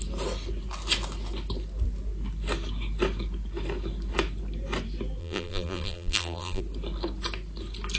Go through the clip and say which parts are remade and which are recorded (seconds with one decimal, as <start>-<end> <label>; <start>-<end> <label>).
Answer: 0.0-5.2 recorded; 5.2-6.6 remade; 6.6-8.0 recorded